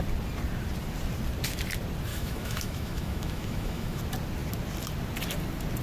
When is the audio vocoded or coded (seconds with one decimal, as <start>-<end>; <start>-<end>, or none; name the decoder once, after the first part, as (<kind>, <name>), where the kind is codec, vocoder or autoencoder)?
2.1-4.0 (autoencoder, DAC-VAE)